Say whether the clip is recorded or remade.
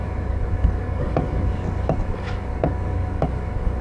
remade